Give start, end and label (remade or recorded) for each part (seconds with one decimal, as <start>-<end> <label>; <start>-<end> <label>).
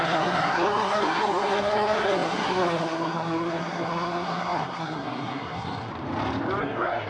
0.0-5.9 remade; 5.9-6.6 recorded; 6.6-7.1 remade